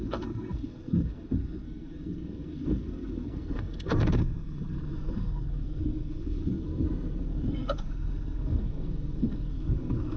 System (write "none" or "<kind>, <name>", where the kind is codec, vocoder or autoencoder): codec, SNAC